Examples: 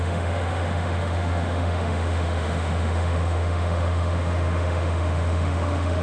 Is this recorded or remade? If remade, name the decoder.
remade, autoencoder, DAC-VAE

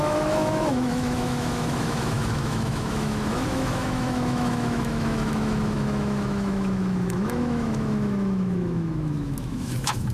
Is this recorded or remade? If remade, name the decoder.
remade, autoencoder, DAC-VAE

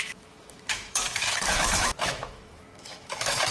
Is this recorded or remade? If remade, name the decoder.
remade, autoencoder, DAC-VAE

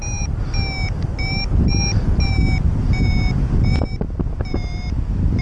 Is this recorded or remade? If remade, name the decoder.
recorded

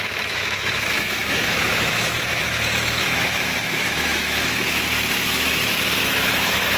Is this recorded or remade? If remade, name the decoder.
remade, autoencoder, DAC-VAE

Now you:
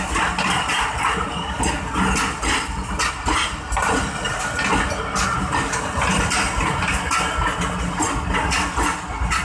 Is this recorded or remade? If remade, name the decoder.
recorded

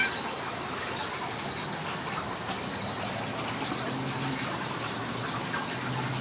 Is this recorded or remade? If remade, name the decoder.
recorded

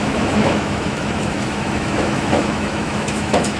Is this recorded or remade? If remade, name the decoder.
remade, autoencoder, DAC-VAE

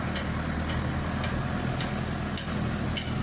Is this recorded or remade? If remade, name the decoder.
recorded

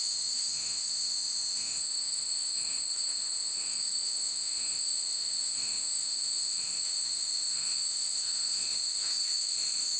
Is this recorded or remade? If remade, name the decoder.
remade, autoencoder, DAC-VAE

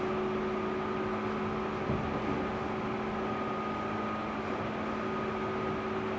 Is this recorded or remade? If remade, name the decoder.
recorded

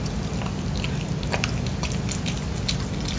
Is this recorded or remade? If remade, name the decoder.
recorded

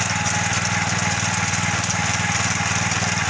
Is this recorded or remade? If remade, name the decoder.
recorded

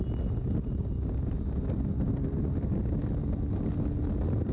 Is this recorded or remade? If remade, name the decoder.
recorded